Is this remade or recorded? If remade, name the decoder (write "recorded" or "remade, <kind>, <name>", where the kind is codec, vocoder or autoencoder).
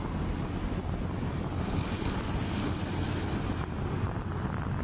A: recorded